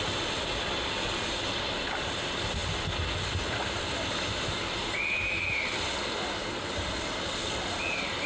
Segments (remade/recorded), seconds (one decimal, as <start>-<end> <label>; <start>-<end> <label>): 0.0-8.3 recorded